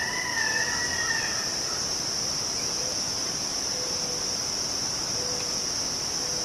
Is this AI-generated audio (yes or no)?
no